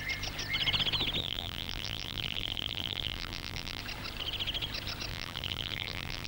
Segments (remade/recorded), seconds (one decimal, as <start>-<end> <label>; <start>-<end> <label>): 0.0-1.2 recorded; 1.2-3.8 remade; 3.8-5.1 recorded; 5.1-6.3 remade